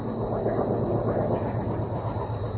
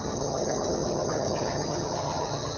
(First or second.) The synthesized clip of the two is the second